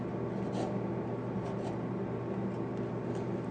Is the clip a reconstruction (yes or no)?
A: no